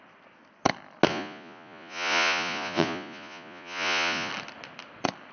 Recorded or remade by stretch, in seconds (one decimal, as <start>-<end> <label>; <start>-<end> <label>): 0.0-1.1 recorded; 1.1-4.3 remade; 4.3-5.3 recorded